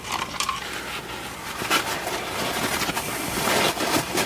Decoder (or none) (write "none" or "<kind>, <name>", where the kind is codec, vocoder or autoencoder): none